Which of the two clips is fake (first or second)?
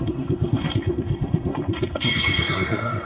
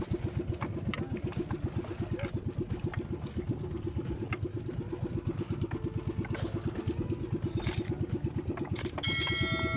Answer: first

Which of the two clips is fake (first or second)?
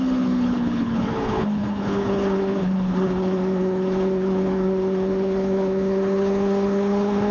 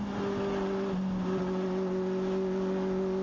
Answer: first